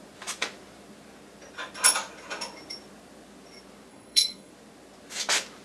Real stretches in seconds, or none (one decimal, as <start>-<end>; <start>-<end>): 0.0-3.9; 4.5-5.6